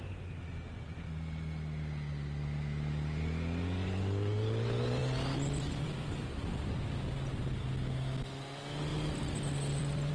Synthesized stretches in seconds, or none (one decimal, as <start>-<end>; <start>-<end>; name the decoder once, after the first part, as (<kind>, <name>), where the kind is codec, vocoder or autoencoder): 5.0-6.8 (vocoder, BigVGAN v2); 8.9-10.1